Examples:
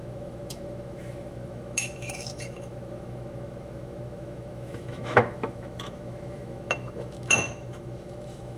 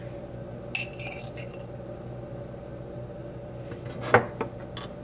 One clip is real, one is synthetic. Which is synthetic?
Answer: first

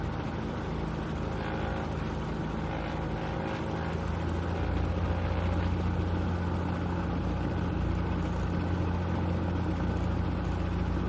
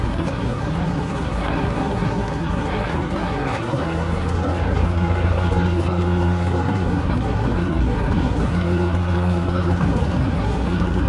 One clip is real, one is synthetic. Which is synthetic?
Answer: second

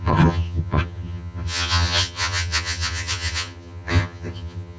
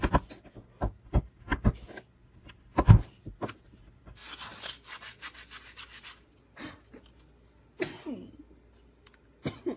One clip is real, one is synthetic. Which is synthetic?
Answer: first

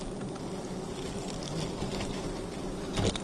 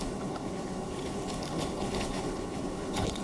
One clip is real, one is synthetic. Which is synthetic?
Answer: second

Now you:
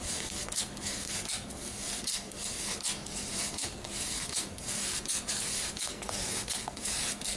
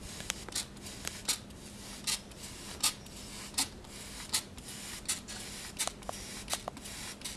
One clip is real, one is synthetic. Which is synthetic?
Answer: first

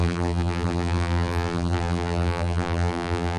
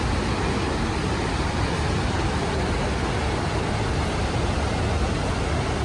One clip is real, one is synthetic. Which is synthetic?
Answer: first